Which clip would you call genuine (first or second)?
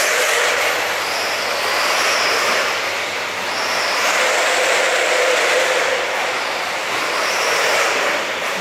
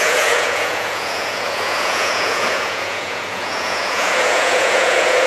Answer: first